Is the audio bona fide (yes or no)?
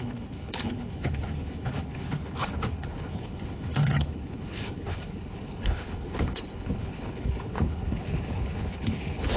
no